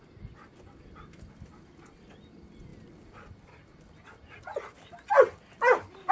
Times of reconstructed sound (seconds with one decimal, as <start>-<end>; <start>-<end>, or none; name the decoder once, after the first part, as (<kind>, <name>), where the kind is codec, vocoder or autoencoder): none